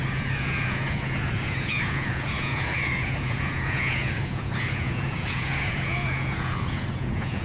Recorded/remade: remade